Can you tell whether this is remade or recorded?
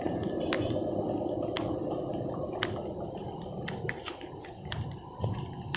remade